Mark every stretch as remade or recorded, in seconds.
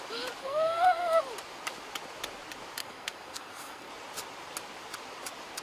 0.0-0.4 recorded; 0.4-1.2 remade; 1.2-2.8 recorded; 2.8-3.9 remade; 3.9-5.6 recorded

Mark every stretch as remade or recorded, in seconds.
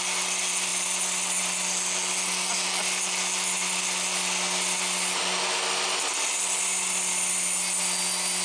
0.0-8.4 recorded